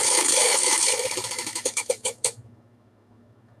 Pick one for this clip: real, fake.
fake